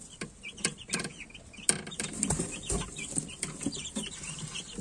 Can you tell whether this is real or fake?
real